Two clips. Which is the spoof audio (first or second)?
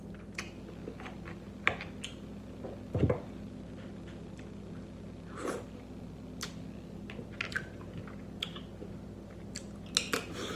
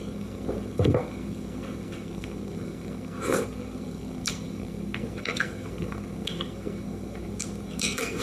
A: second